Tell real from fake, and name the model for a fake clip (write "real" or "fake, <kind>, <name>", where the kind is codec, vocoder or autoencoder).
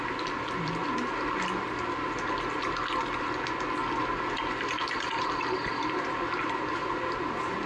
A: real